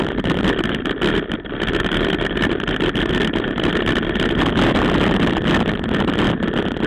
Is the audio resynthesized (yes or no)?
no